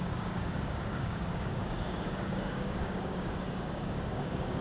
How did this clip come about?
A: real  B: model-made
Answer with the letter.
B